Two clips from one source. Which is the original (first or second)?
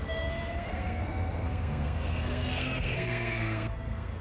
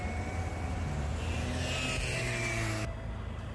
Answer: second